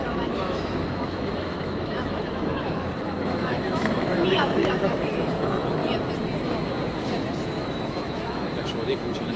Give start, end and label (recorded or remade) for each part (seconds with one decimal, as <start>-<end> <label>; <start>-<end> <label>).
0.0-5.8 remade; 5.8-7.4 recorded; 7.4-9.4 remade